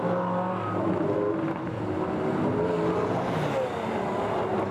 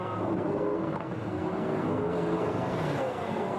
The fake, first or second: second